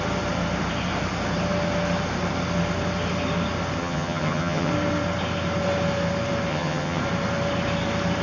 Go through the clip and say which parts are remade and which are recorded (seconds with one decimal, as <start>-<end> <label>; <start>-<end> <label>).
0.0-3.8 recorded; 3.8-4.7 remade; 4.7-6.5 recorded; 6.5-7.0 remade; 7.0-8.2 recorded